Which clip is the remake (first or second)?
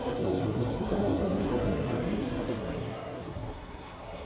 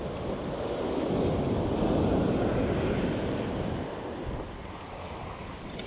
first